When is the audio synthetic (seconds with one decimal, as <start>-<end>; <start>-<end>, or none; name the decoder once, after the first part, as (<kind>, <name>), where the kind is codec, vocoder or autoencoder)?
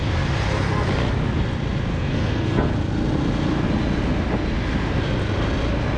1.9-2.7 (codec, SNAC)